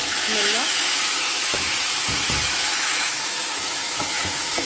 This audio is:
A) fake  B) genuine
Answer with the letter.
A